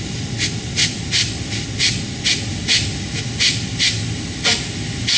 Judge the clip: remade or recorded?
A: recorded